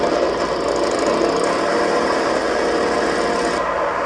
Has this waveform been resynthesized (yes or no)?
no